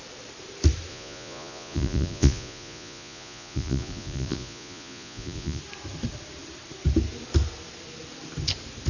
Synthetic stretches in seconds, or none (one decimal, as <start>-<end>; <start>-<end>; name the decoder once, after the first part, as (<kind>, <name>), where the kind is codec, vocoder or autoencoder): 0.9-5.6 (vocoder, Vocos)